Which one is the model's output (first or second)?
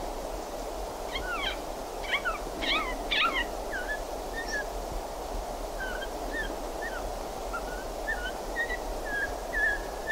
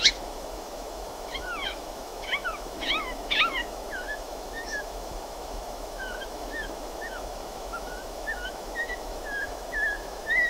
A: second